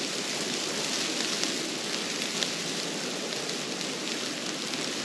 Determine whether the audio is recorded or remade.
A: recorded